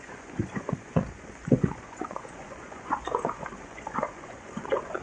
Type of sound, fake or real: fake